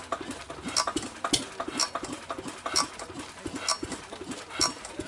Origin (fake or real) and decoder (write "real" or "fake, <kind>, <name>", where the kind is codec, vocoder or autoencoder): real